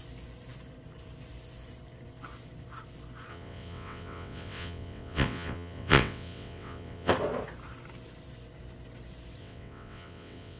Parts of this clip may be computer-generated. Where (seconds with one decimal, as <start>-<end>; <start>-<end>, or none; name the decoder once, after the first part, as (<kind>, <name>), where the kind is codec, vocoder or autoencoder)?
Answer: 3.3-7.1 (vocoder, WaveNeXt); 9.4-10.6